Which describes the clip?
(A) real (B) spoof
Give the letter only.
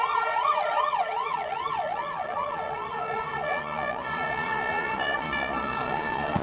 B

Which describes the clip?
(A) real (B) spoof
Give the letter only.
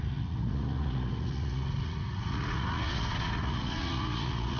B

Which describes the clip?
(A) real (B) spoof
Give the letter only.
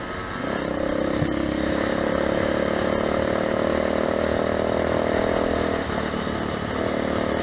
A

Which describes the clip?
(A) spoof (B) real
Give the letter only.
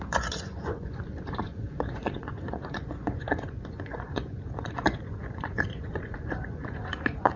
A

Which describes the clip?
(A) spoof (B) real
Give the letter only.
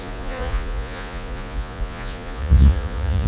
A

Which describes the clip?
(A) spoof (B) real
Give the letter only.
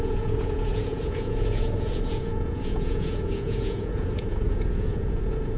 A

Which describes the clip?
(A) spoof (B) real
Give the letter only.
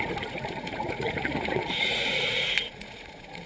A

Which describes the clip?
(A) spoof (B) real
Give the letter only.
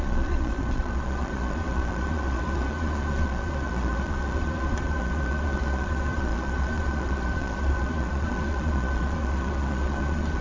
A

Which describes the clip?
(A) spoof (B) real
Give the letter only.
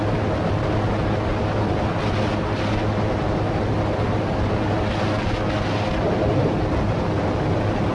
B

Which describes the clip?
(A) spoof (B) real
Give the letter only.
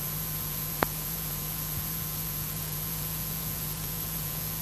A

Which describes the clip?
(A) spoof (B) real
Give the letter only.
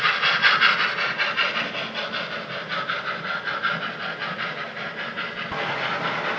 B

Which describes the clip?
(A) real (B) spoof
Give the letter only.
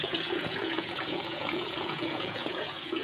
B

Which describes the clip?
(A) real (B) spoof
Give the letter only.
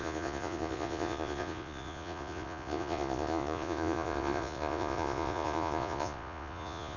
B